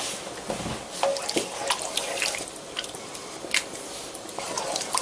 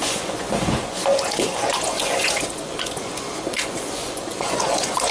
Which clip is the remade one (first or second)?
second